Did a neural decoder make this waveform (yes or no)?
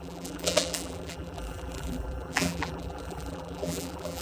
yes